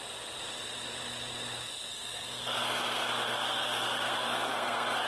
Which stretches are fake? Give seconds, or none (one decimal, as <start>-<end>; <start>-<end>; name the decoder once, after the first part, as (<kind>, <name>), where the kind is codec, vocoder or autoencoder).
1.9-5.1 (codec, SNAC)

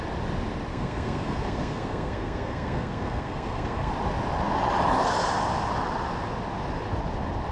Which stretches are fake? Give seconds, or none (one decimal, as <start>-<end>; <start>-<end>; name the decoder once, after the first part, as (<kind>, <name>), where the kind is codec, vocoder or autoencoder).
0.7-3.9 (codec, SNAC)